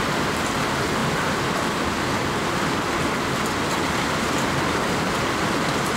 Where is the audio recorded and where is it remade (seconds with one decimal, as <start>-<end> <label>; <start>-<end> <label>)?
0.0-6.0 recorded